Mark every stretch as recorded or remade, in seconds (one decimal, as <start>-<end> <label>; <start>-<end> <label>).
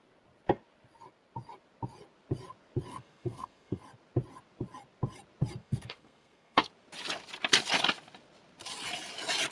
0.0-2.9 recorded; 2.9-3.8 remade; 3.8-5.6 recorded; 5.6-6.7 remade; 6.7-9.5 recorded